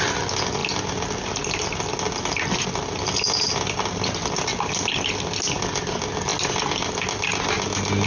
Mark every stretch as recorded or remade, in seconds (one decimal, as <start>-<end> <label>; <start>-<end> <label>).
0.0-8.1 recorded